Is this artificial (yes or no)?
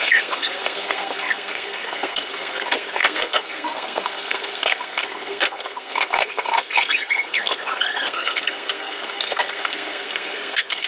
yes